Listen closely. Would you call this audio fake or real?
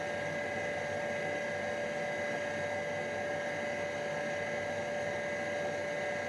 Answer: real